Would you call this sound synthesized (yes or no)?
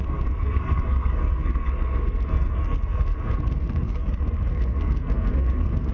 yes